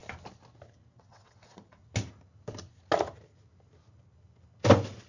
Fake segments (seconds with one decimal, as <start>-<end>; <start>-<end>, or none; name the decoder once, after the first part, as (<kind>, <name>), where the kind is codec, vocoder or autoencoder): 0.9-1.8 (vocoder, WaveNeXt)

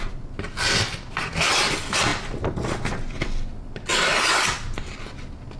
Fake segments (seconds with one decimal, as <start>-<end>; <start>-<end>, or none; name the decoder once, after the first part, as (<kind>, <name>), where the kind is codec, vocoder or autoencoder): none